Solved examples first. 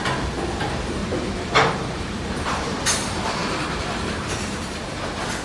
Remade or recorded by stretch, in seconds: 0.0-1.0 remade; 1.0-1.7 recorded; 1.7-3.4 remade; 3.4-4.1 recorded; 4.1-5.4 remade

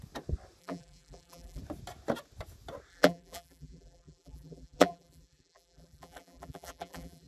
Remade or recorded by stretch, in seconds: 0.0-0.6 recorded; 0.6-1.6 remade; 1.6-2.9 recorded; 2.9-7.3 remade

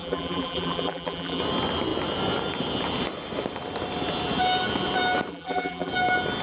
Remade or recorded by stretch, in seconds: 0.0-1.4 remade; 1.4-5.3 recorded; 5.3-5.9 remade; 5.9-6.4 recorded

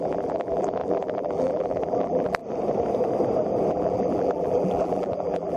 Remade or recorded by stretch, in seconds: 0.0-2.4 remade; 2.4-3.7 recorded; 3.7-5.6 remade

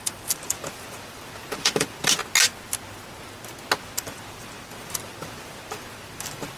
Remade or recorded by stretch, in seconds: 0.0-2.2 remade; 2.2-4.0 recorded; 4.0-6.6 remade

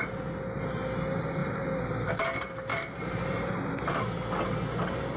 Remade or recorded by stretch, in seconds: 0.0-1.4 recorded; 1.4-2.1 remade; 2.1-2.7 recorded; 2.7-3.5 remade; 3.5-5.2 recorded